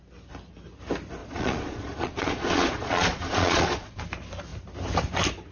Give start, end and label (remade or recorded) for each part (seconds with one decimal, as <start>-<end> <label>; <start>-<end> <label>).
0.0-1.2 recorded; 1.2-4.0 remade; 4.0-5.5 recorded